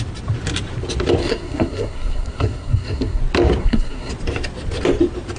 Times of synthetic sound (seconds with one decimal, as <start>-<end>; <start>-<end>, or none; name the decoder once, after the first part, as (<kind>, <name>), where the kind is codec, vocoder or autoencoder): 1.2-3.2 (codec, SNAC); 3.6-4.1